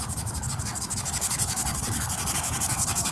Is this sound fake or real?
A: fake